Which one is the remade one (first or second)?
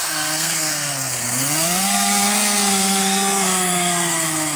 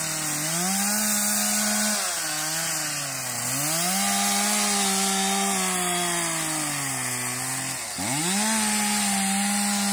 first